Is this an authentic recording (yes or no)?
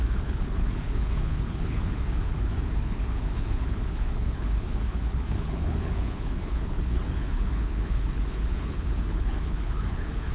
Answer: no